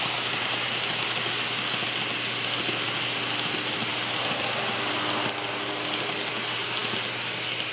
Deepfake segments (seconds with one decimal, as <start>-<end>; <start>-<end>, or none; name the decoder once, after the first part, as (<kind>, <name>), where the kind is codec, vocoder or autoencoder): none